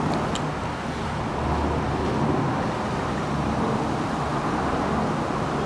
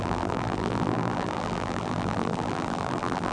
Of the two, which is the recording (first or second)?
first